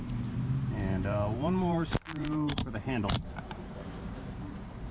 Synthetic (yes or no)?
yes